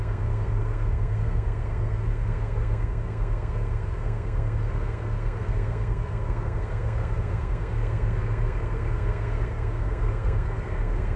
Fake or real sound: fake